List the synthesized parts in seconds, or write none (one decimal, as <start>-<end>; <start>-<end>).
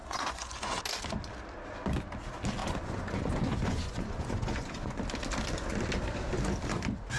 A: 0.0-0.8; 2.6-5.0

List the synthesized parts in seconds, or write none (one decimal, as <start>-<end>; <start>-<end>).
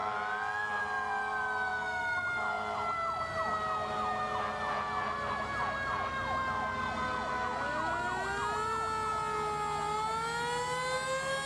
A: none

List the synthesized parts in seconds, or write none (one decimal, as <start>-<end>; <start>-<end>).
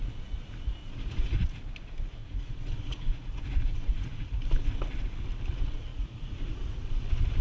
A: 0.8-1.6; 2.2-4.4; 5.9-6.9